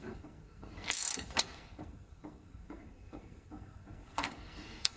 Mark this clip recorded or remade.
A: remade